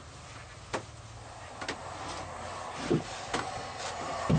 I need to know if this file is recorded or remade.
recorded